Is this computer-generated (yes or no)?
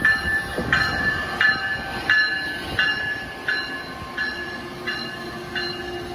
no